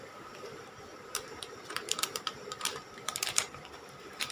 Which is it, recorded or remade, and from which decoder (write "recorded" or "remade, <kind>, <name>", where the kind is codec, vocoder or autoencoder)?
remade, vocoder, BigVGAN v2